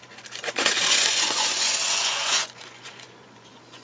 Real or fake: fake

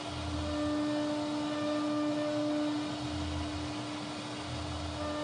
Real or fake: real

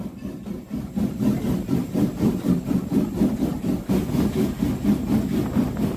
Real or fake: real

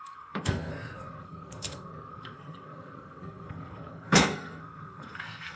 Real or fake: fake